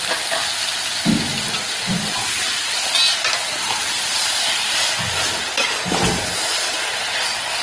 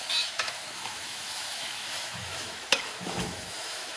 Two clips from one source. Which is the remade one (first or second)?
second